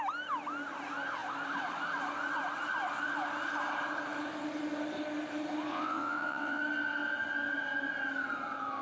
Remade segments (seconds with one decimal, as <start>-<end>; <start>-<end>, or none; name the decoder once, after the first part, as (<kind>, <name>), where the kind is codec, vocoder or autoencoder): 5.7-6.6 (vocoder, WaveNeXt)